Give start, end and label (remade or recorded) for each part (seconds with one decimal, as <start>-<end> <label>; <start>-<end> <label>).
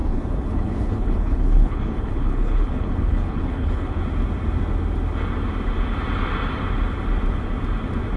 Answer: 0.0-4.0 remade; 4.0-8.2 recorded